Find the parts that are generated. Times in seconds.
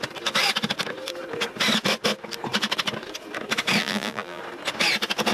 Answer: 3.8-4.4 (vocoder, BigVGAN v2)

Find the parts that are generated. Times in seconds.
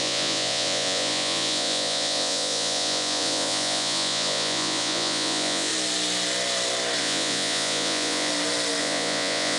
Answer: 0.0-5.7 (vocoder, Vocos); 7.0-8.3; 8.8-9.6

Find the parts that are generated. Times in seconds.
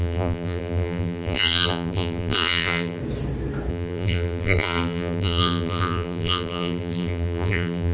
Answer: 0.0-3.0 (vocoder, BigVGAN v2); 3.7-7.9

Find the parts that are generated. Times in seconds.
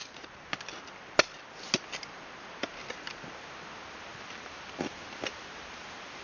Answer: 0.0-0.5 (vocoder, BigVGAN v2)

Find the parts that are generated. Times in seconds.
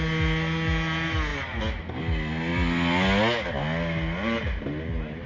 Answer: none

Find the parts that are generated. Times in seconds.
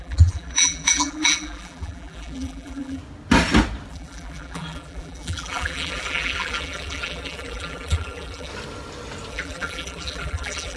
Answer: 0.0-3.0 (vocoder, BigVGAN v2); 3.9-8.5; 9.3-10.8